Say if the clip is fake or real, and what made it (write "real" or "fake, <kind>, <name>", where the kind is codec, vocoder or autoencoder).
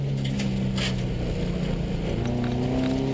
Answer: real